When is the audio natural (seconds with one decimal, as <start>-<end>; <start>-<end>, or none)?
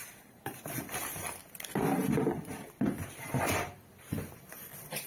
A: none